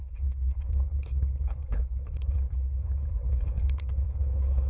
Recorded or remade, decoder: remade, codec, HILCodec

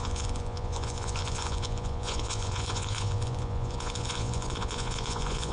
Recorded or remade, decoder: remade, vocoder, Vocos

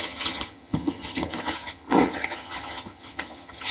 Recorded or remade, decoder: remade, vocoder, HiFi-GAN